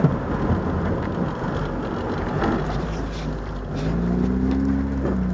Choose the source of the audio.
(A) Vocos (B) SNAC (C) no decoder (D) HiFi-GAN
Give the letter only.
C